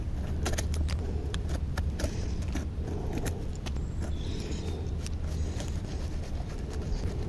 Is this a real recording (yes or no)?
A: no